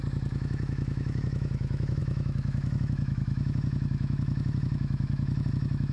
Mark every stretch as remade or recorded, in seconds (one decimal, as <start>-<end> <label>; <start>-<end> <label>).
0.0-5.9 remade

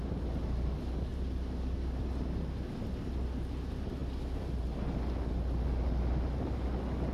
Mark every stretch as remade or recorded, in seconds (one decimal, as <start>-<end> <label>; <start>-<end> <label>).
0.0-7.1 recorded